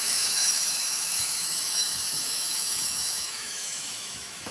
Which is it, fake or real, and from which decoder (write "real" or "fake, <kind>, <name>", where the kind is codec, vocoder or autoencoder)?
fake, autoencoder, DAC-VAE